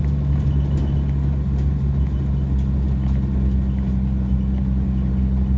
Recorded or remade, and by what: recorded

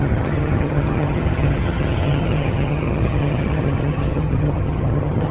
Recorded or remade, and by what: remade, vocoder, HiFi-GAN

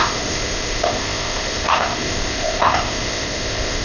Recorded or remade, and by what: remade, codec, ZipCodec